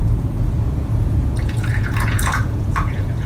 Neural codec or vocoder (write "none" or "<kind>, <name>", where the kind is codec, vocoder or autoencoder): vocoder, Vocos